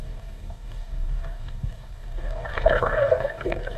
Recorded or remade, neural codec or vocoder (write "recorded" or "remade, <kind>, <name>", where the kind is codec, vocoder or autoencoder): remade, codec, DAC